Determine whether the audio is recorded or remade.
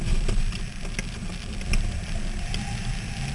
recorded